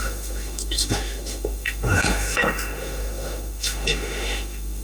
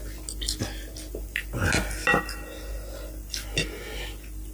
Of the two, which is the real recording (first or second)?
second